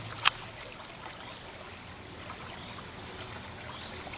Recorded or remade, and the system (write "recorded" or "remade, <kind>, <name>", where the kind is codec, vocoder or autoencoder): recorded